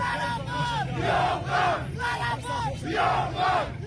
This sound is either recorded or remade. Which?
recorded